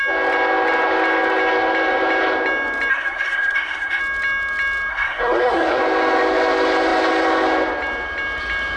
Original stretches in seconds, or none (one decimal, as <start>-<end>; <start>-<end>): 0.0-2.9; 4.0-4.9; 5.8-8.8